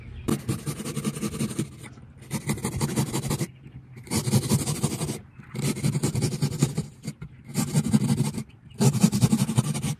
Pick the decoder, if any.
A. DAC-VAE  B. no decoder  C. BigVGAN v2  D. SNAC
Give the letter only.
B